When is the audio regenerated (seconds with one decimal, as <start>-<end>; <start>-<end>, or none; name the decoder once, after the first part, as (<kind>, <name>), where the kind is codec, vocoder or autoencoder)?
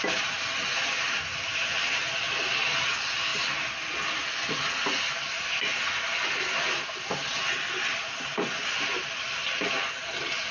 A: none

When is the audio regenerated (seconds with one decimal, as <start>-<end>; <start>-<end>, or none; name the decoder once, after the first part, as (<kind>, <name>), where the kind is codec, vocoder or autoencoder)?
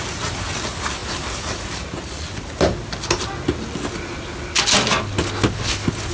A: none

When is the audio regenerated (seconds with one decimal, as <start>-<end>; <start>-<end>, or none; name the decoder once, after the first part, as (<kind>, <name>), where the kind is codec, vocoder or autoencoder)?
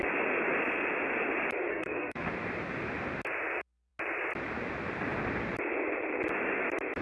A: 1.7-2.3 (codec, SNAC)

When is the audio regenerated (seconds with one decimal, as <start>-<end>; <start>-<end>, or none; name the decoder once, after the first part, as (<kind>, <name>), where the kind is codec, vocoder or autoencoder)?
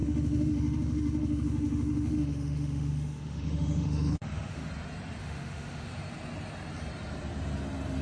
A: 0.0-4.7 (autoencoder, DAC-VAE); 5.2-5.9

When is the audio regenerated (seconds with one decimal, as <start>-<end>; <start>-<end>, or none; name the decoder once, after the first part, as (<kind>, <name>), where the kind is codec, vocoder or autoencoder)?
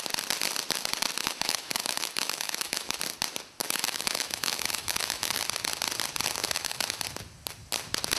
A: 1.2-3.0 (autoencoder, DAC-VAE); 3.6-5.4; 6.4-7.0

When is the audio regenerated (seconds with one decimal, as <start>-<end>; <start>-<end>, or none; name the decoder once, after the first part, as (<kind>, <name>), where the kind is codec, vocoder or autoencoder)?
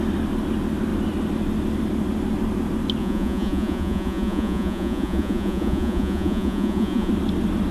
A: 3.0-7.1 (vocoder, Vocos)